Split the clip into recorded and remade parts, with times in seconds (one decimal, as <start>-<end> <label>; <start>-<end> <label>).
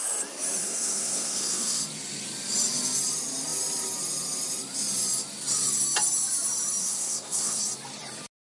0.0-0.6 recorded; 0.6-1.8 remade; 1.8-6.8 recorded; 6.8-7.6 remade; 7.6-8.4 recorded